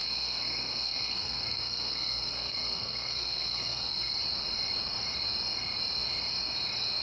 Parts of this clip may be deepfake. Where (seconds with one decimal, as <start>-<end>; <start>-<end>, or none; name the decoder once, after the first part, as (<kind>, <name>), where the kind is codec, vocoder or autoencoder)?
0.0-4.1 (codec, SNAC)